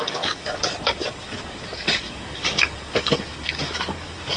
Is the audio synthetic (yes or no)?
yes